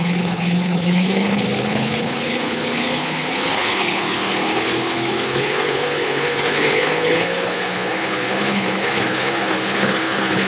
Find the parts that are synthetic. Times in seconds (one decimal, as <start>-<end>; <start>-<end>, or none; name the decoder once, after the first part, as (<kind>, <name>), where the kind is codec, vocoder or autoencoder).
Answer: 0.0-10.5 (codec, HILCodec)